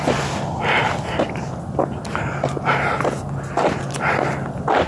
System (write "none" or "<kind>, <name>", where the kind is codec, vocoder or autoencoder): none